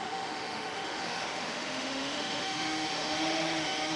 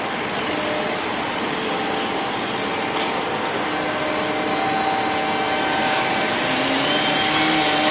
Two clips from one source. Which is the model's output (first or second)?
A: first